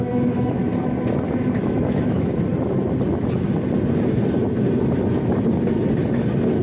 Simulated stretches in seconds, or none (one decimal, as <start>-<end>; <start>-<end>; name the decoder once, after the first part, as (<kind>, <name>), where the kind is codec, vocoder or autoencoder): 0.0-0.6 (autoencoder, DAC-VAE); 1.6-2.4